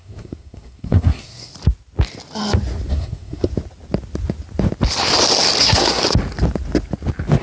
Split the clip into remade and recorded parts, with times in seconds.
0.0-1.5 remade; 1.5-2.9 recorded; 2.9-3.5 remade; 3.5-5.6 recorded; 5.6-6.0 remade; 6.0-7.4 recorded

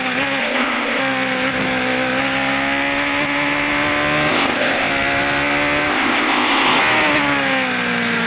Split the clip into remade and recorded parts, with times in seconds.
0.0-0.4 recorded; 0.4-1.0 remade; 1.0-4.3 recorded; 4.3-4.9 remade; 4.9-5.9 recorded; 5.9-6.8 remade; 6.8-8.3 recorded

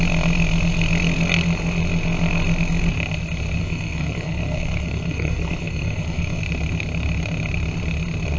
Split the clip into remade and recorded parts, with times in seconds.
0.0-3.6 recorded; 3.6-6.4 remade; 6.4-8.4 recorded

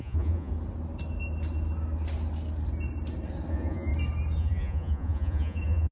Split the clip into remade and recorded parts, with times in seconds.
0.0-0.5 remade; 0.5-3.5 recorded; 3.5-3.9 remade; 3.9-4.4 recorded; 4.4-5.9 remade